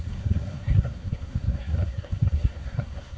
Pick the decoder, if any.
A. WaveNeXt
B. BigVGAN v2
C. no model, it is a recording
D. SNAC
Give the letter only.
D